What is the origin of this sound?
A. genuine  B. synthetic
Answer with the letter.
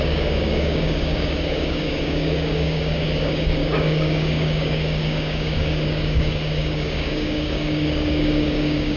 B